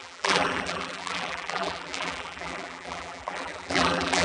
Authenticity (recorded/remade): remade